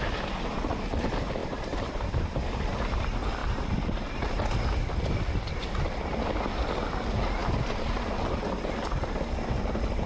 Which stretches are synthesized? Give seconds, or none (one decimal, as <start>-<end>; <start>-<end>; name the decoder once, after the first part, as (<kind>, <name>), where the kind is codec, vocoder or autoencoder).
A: 1.4-2.4 (vocoder, BigVGAN v2)